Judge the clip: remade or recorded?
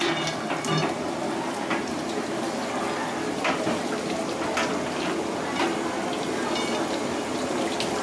recorded